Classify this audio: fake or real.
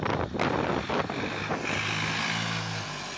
real